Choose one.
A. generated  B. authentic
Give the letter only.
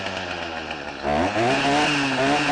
B